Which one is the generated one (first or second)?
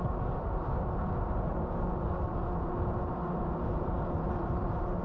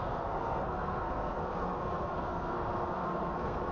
second